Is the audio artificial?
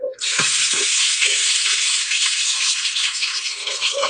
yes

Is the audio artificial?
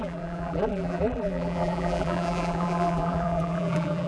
yes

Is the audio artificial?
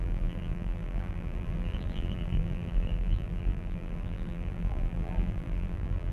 yes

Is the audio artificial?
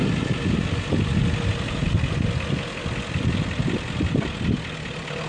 no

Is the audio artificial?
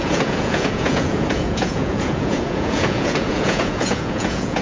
yes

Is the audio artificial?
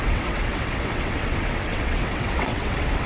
yes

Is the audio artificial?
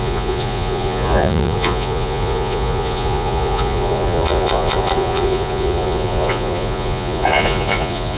yes